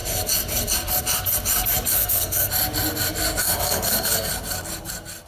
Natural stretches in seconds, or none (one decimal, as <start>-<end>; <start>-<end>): 0.0-1.9; 2.5-3.4; 4.3-5.3